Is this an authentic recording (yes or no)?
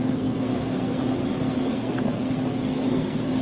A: no